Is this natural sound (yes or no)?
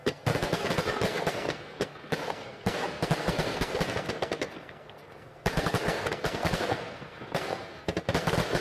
no